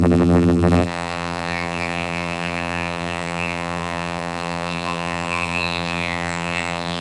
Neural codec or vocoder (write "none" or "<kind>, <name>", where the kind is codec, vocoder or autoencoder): vocoder, BigVGAN v2